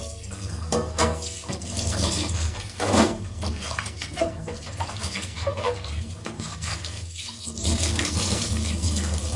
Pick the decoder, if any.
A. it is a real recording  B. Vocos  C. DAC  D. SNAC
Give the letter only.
D